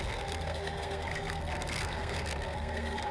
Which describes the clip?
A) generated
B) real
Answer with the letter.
A